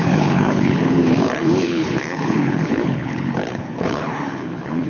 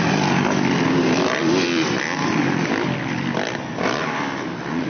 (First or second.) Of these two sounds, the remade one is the first